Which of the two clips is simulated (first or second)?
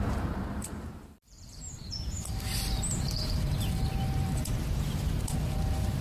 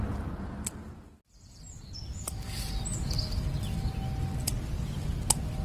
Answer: first